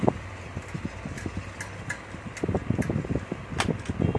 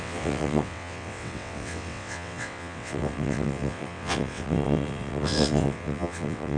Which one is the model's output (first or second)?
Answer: second